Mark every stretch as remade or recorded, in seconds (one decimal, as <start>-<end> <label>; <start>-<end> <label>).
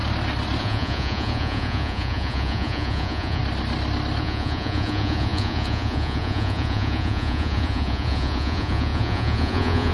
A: 0.0-0.6 recorded; 0.6-3.4 remade; 3.4-4.2 recorded; 4.2-9.9 remade